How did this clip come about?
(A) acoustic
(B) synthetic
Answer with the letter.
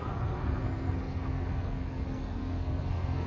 B